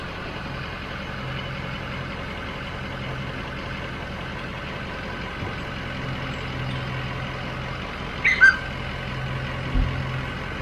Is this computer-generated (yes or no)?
no